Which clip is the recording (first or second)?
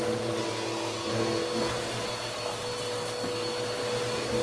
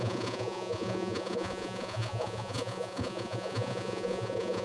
first